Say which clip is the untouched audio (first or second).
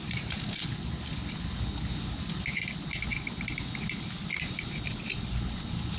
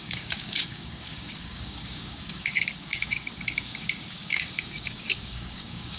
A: first